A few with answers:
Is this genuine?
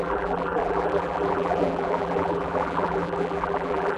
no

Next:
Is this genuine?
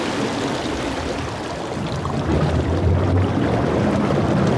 yes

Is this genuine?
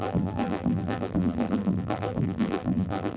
no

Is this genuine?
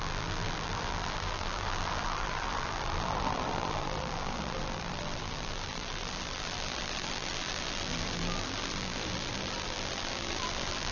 no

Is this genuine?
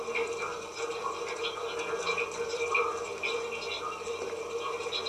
no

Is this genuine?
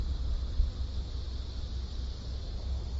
yes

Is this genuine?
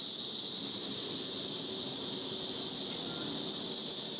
yes